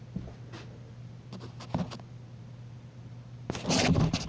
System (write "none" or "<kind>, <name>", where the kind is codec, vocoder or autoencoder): none